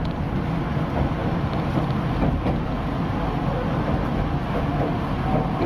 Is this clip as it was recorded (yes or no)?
yes